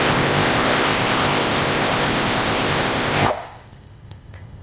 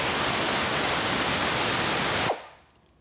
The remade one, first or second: first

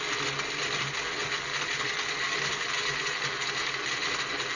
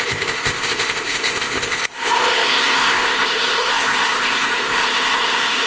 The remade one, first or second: second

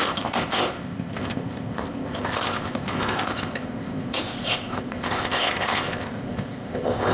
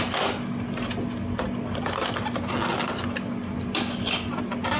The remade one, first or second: first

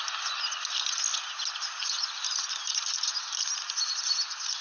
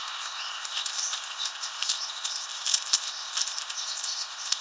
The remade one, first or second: second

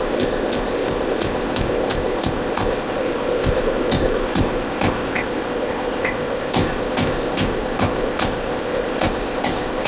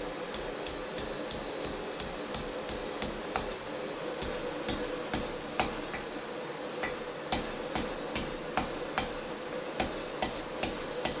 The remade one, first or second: first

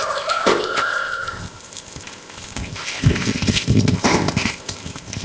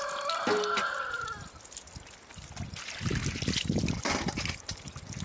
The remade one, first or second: first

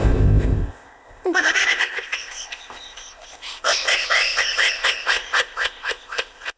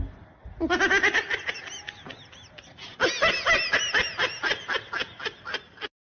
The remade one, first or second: first